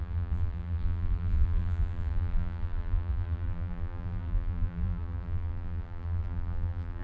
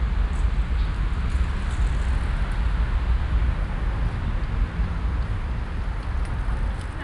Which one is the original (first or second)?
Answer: second